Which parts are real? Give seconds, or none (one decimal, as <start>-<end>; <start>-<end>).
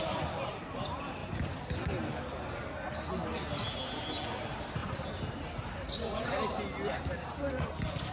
0.0-8.1